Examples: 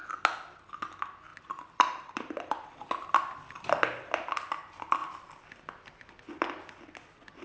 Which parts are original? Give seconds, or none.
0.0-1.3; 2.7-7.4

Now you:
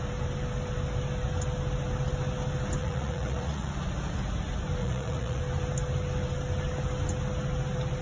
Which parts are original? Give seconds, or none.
0.0-2.8; 3.7-4.8; 5.4-8.0

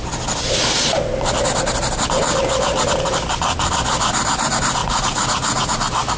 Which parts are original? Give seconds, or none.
0.0-4.8; 5.7-6.2